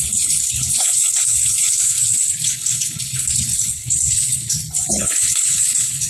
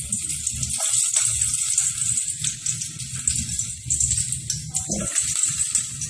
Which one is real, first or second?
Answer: second